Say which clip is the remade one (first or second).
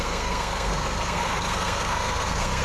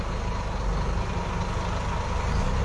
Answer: first